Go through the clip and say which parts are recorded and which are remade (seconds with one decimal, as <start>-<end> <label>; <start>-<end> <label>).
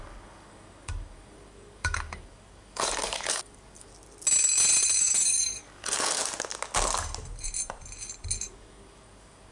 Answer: 0.0-3.9 remade; 3.9-5.0 recorded; 5.0-6.2 remade; 6.2-8.4 recorded; 8.4-9.5 remade